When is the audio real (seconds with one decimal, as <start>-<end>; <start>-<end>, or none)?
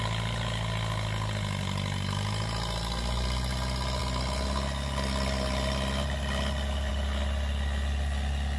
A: 0.0-8.6